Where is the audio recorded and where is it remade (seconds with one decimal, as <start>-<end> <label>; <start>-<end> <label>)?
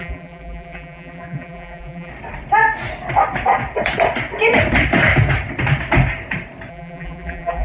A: 0.0-2.1 remade; 2.1-6.7 recorded; 6.7-7.6 remade